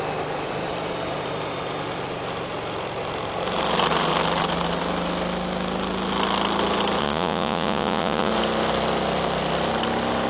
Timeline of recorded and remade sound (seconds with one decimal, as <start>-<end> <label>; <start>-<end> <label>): 0.0-7.0 recorded; 7.0-8.3 remade; 8.3-10.3 recorded